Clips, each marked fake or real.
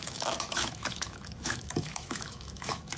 fake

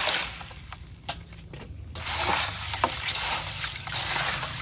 real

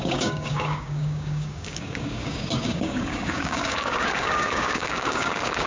fake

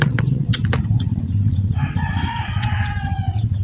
fake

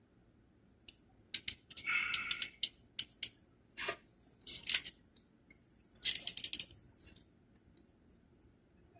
real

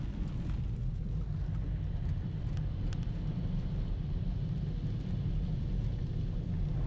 real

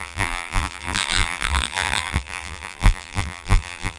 fake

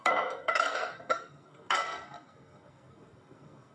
fake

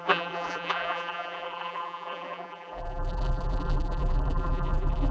fake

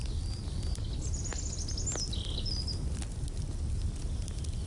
real